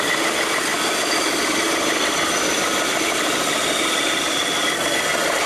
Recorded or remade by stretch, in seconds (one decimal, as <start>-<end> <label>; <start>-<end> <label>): 0.0-5.5 recorded